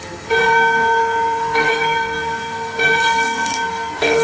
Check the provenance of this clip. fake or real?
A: fake